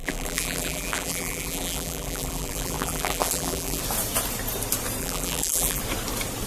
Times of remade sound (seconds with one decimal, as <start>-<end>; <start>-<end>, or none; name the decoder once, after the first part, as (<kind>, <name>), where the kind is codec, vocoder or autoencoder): 0.0-3.8 (vocoder, BigVGAN v2); 5.0-5.8